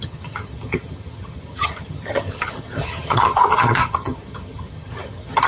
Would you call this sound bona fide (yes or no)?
no